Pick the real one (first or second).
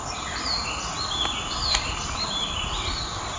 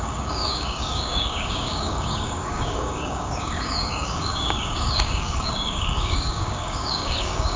first